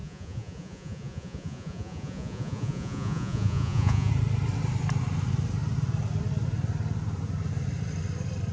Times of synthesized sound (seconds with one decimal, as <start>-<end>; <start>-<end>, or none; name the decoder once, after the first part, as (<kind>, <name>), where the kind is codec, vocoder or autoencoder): 0.0-4.1 (vocoder, Vocos)